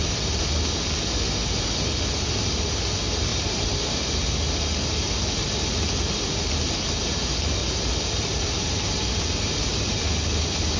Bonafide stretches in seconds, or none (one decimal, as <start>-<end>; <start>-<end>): 0.0-3.3; 4.0-7.6; 10.0-10.8

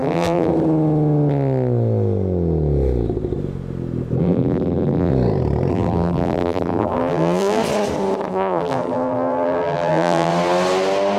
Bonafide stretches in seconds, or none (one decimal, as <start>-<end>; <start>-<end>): 0.5-4.2; 5.1-5.7; 7.6-8.3; 10.3-11.2

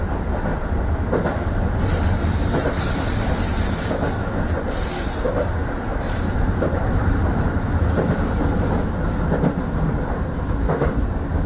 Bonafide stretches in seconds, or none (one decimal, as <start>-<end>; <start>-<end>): 0.0-0.5; 2.2-5.9; 8.3-11.5

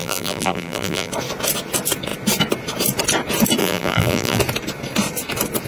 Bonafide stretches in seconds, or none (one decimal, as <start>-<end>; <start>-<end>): 1.1-3.6; 4.4-5.7

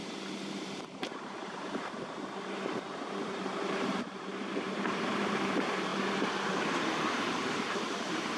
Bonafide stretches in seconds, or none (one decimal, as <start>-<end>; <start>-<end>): 5.9-6.5

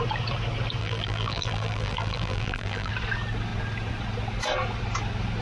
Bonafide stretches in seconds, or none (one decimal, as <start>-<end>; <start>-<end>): 0.0-0.8; 2.9-5.4

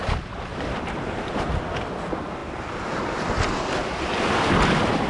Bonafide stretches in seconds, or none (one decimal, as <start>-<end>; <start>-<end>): 0.0-0.5; 1.6-5.1

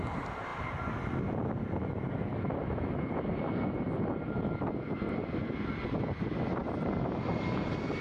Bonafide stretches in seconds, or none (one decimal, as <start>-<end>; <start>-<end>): 0.0-8.0